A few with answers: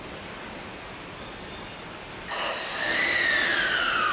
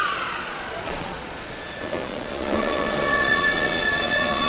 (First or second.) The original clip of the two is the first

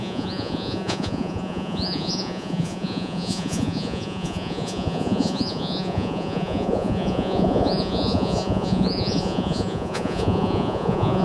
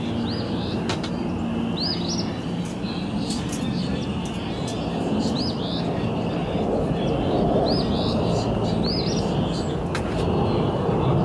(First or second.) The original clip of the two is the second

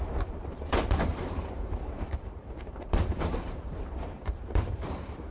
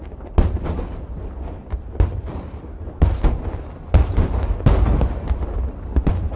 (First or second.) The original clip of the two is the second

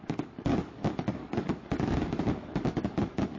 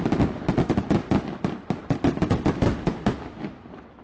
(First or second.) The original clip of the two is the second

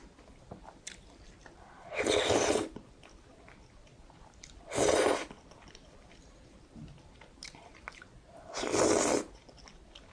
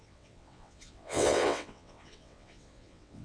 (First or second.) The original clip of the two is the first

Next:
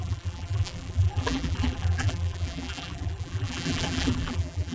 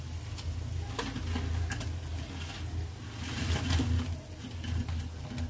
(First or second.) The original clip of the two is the second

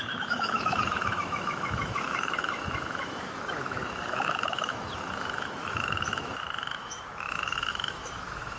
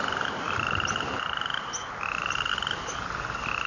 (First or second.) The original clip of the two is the second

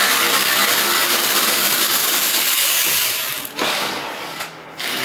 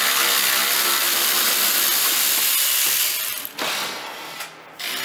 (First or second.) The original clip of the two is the second